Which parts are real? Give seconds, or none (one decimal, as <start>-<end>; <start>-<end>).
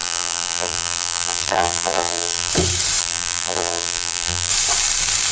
2.5-3.0; 4.5-5.3